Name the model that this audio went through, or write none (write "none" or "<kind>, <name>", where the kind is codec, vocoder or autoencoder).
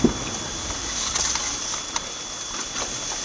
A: none